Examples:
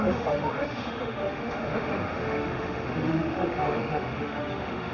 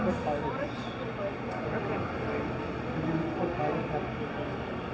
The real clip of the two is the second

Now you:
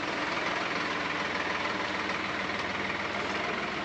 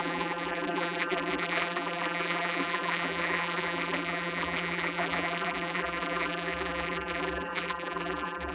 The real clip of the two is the first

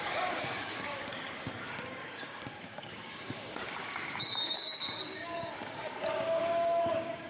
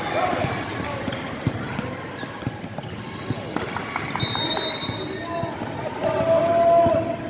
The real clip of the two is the second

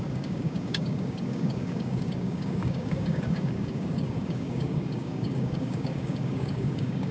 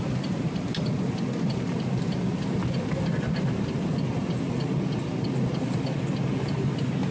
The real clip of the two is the second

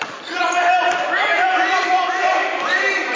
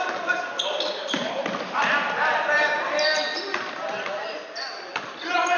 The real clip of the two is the second